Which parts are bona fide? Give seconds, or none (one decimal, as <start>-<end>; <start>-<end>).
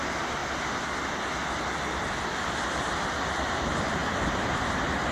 0.4-3.5; 4.0-4.5